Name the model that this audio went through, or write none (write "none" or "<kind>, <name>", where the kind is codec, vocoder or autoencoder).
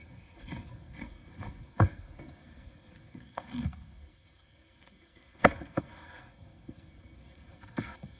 codec, SNAC